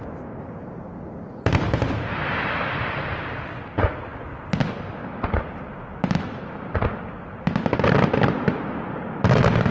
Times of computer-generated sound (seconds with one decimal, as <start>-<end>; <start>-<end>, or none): none